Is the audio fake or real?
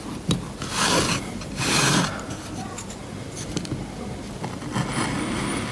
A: real